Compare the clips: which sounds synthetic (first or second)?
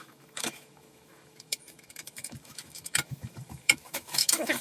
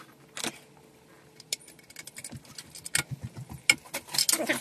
first